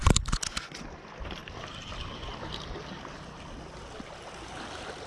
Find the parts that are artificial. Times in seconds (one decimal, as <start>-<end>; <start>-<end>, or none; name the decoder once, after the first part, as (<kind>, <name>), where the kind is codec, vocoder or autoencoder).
none